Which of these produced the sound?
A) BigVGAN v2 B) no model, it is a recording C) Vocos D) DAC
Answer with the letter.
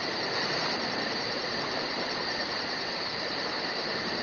A